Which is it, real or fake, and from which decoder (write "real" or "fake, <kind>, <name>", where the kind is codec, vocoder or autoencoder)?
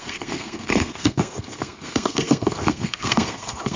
fake, codec, SNAC